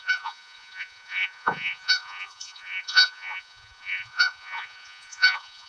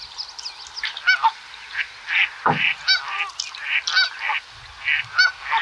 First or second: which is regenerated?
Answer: first